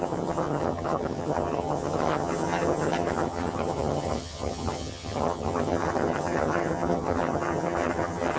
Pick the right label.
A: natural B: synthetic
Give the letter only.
B